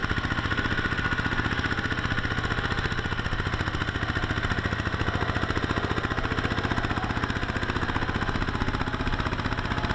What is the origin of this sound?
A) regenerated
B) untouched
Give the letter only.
B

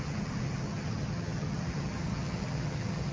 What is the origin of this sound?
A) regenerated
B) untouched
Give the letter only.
A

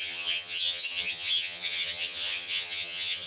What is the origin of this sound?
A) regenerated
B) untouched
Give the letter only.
A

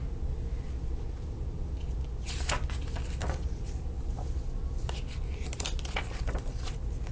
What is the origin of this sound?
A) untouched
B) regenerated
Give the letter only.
A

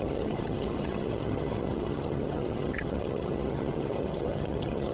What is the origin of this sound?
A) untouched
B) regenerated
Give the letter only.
B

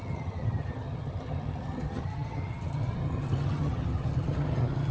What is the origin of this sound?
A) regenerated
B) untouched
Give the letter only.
A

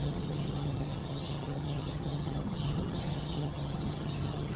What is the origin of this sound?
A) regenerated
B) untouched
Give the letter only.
A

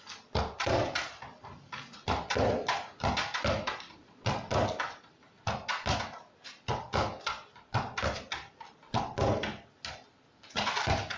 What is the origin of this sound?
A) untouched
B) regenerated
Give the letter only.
A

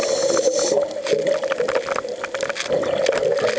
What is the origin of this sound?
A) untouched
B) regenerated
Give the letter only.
A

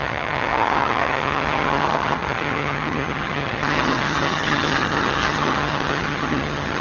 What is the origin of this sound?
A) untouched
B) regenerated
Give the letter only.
B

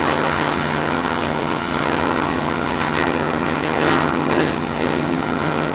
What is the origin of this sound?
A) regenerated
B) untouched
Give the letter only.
A